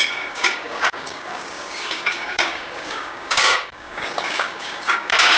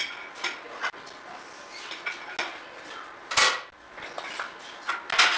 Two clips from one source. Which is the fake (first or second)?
first